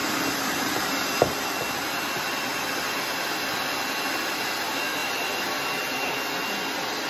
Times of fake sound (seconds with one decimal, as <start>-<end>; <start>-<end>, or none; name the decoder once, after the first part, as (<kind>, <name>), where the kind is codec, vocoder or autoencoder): none